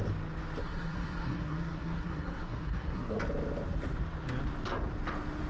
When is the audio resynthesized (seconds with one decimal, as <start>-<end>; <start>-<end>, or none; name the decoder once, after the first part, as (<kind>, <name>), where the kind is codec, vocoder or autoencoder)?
0.6-3.2 (codec, SNAC)